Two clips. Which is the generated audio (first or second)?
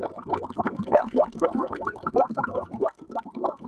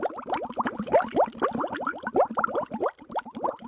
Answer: first